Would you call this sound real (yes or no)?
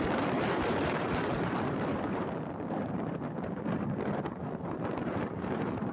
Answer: no